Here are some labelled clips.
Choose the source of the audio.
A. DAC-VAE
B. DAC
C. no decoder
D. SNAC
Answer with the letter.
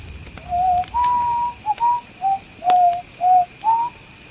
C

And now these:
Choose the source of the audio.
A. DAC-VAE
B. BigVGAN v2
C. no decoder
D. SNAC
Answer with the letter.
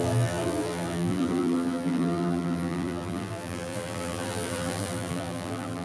B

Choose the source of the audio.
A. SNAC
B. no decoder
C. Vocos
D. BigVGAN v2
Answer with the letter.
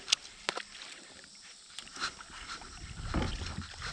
B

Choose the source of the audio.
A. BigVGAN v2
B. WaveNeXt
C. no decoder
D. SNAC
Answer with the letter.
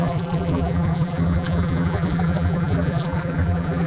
A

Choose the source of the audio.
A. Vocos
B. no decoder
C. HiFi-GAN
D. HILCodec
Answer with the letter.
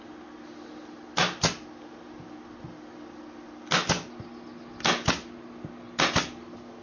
B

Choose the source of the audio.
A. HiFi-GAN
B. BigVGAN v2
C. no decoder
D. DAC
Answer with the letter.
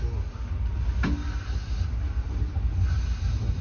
C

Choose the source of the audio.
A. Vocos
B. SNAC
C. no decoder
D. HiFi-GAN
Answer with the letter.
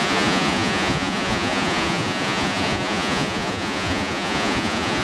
A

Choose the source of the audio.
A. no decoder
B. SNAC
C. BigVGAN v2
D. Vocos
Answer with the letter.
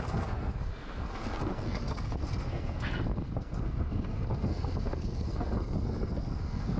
B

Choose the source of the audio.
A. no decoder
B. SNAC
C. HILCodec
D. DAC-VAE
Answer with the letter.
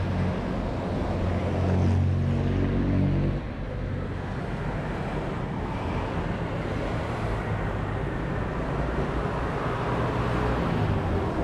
A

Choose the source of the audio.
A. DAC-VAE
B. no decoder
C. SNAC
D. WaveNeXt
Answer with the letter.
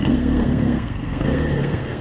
C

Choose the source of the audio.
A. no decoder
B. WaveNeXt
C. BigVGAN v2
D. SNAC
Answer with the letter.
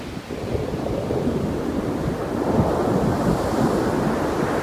A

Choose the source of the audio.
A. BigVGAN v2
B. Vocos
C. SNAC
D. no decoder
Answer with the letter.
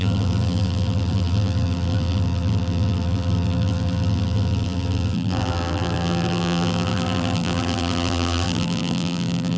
A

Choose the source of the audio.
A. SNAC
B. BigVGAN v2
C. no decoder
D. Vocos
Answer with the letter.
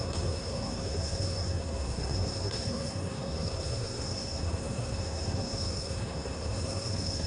A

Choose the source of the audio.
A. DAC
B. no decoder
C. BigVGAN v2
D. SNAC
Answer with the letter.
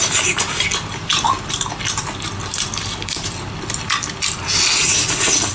C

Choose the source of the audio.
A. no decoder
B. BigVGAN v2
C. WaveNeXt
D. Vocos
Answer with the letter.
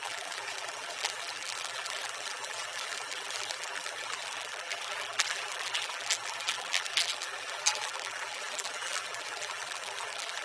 B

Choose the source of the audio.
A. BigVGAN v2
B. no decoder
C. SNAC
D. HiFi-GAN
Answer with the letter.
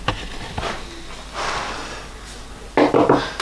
B